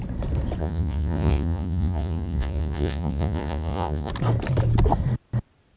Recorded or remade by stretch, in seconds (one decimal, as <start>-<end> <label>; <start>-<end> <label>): 0.0-0.6 recorded; 0.6-4.1 remade; 4.1-5.8 recorded